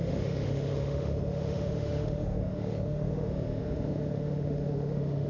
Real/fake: fake